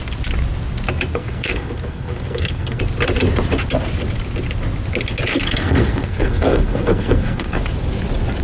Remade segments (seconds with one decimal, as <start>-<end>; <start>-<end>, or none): 1.1-2.8; 5.3-7.6